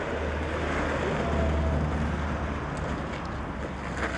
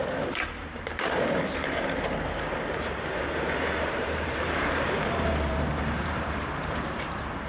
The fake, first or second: second